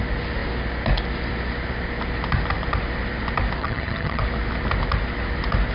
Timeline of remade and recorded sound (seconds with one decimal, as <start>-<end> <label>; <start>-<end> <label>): 0.0-3.6 recorded; 3.6-4.2 remade; 4.2-5.7 recorded